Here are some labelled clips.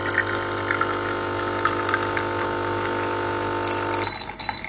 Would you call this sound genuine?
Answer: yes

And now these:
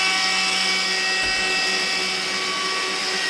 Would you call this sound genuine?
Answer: yes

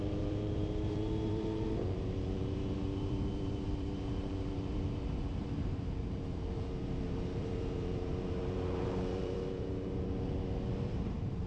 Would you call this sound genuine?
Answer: no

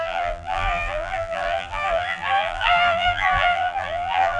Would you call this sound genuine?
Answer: no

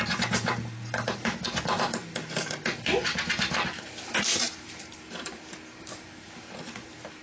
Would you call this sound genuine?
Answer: no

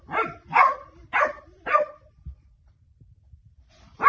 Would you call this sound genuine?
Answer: no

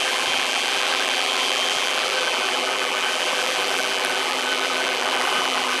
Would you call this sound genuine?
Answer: no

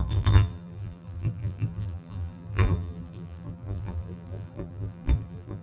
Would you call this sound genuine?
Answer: no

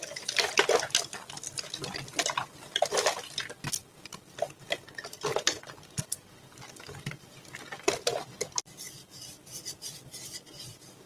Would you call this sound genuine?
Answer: yes